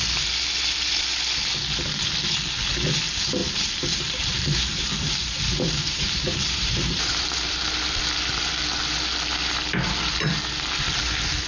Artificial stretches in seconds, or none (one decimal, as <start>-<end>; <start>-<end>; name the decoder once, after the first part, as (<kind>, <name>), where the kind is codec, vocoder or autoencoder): 3.4-8.0 (vocoder, BigVGAN v2)